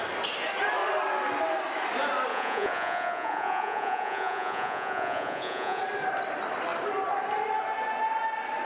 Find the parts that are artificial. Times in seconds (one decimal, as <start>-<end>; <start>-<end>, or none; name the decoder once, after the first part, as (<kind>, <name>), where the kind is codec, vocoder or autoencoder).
2.3-5.8 (vocoder, Vocos)